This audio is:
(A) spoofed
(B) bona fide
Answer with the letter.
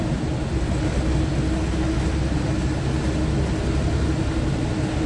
B